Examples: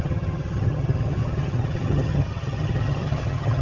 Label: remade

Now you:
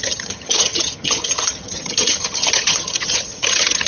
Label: remade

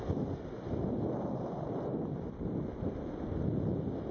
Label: recorded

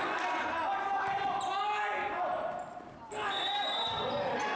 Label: recorded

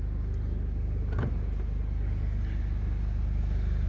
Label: recorded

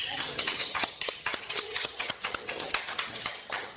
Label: remade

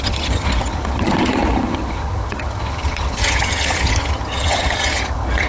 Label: remade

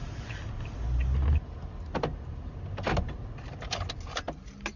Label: recorded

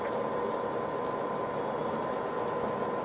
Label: recorded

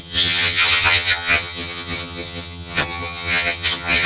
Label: remade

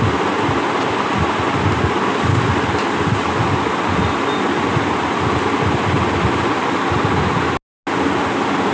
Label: recorded